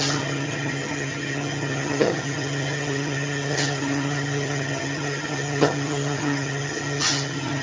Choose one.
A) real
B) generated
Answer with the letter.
B